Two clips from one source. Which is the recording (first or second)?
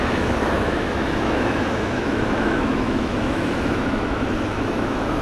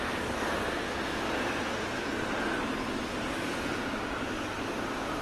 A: second